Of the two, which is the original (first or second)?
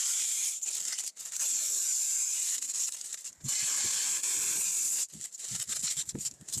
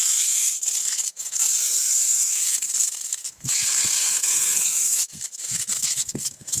first